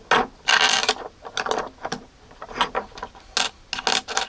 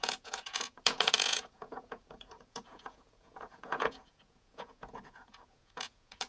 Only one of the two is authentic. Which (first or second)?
first